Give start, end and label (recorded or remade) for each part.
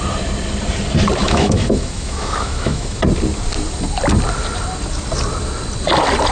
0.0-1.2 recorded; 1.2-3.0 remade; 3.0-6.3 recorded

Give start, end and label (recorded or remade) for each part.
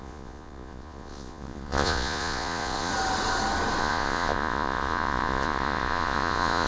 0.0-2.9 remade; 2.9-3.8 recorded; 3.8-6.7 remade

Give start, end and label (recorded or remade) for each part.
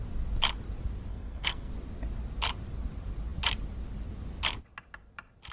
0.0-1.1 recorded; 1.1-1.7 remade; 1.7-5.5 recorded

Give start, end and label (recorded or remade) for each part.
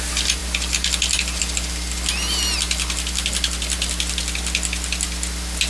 0.0-5.7 recorded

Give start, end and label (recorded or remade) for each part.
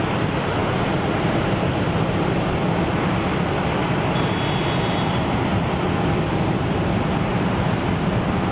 0.0-0.6 recorded; 0.6-2.3 remade; 2.3-3.8 recorded; 3.8-4.4 remade; 4.4-7.3 recorded; 7.3-7.9 remade; 7.9-8.5 recorded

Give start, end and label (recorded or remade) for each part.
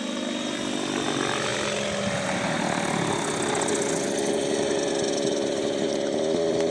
0.0-6.7 recorded